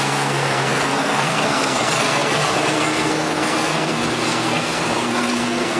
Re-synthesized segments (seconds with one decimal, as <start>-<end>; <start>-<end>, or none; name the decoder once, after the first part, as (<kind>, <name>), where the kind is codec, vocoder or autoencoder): 0.0-5.8 (codec, SNAC)